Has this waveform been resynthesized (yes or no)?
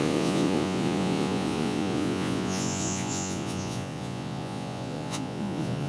yes